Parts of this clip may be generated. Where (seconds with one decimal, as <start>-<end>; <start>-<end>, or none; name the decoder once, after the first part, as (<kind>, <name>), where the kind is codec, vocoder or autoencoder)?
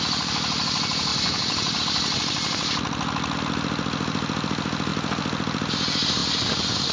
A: none